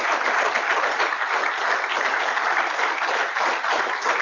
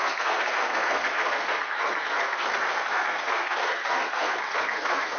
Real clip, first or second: first